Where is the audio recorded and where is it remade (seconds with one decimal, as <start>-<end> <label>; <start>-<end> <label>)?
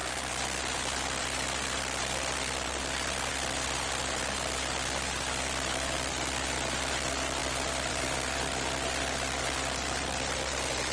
0.0-10.9 recorded